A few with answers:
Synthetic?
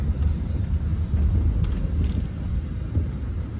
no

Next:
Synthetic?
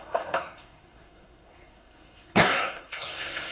yes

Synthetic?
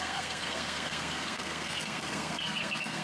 yes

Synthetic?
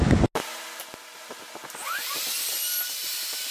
no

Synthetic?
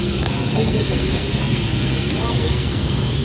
yes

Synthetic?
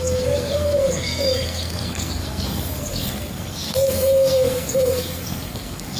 yes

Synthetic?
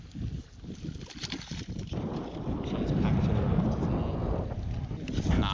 no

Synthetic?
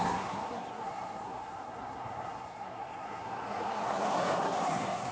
yes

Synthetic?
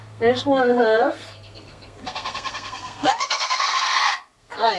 yes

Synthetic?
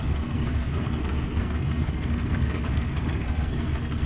yes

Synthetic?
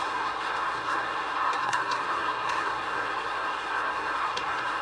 yes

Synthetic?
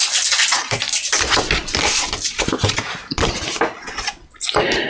no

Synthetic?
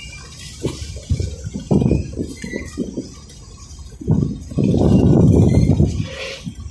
no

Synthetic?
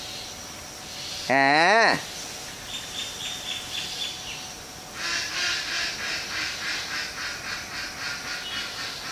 no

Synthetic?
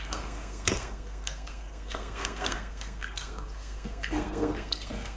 yes